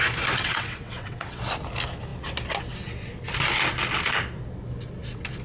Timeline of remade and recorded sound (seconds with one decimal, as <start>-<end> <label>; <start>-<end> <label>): 0.0-0.4 recorded; 0.4-1.4 remade; 1.4-5.4 recorded